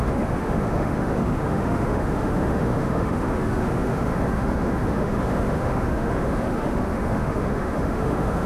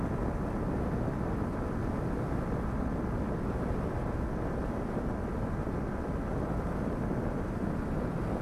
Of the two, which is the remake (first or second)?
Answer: first